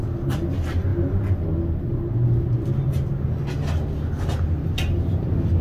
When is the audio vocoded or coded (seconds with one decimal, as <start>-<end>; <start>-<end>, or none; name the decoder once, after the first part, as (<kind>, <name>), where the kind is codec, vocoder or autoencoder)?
none